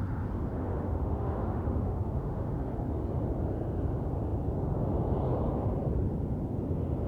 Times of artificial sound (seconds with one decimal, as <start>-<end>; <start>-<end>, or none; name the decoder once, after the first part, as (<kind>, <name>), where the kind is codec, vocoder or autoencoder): 0.6-2.5 (autoencoder, DAC-VAE)